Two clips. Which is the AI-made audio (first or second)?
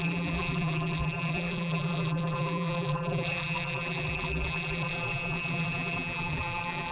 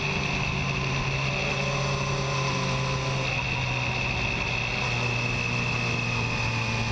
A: first